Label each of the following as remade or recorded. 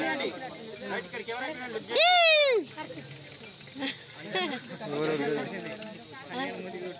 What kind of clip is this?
recorded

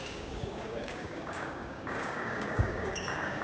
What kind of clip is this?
remade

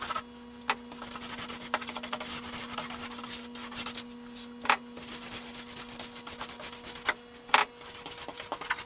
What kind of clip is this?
recorded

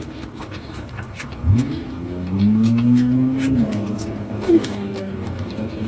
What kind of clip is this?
remade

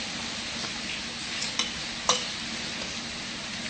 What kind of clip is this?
recorded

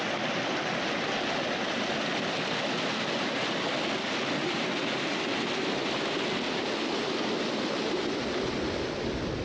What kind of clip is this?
recorded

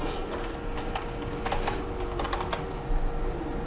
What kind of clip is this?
recorded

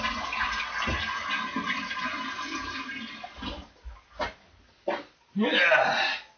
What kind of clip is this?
recorded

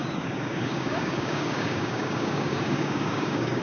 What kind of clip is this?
remade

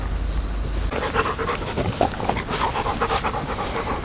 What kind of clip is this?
recorded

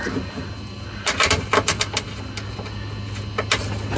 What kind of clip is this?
recorded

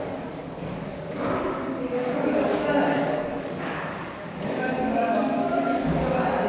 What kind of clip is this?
remade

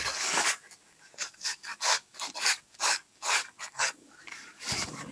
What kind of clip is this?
remade